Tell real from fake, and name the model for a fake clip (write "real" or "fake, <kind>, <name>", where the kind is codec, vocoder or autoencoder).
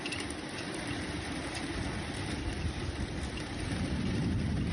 fake, vocoder, BigVGAN v2